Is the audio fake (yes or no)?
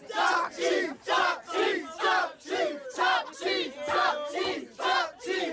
no